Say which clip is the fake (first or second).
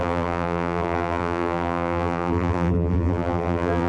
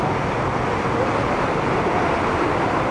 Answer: first